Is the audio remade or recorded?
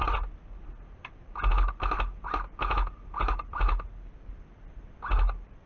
recorded